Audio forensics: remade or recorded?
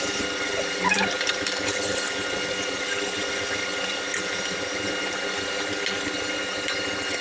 recorded